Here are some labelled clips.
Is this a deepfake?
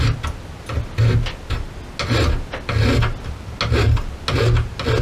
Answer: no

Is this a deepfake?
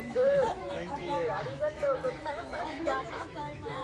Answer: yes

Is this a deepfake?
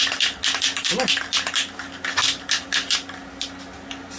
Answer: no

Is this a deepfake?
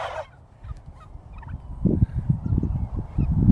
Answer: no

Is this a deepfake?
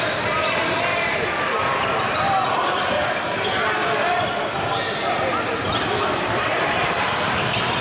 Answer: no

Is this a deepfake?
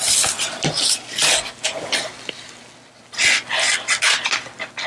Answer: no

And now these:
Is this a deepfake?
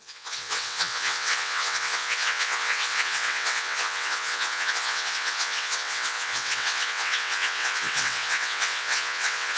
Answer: yes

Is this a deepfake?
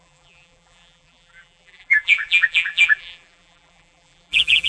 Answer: yes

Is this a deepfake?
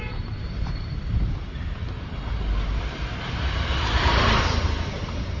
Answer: yes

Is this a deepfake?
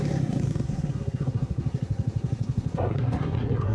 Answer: yes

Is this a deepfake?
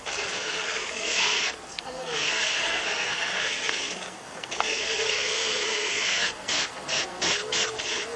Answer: yes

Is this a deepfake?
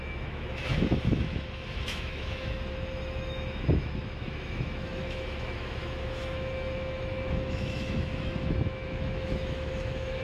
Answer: yes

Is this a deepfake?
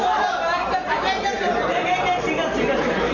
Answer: yes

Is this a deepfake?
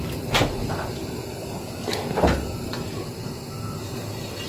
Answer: no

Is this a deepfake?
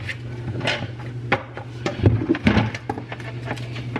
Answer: no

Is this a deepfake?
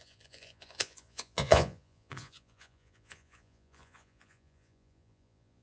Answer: yes